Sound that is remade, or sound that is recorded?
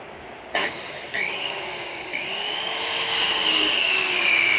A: remade